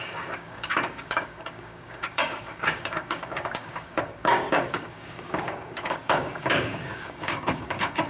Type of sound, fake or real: fake